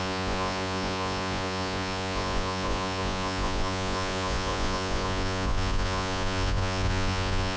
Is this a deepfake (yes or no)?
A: yes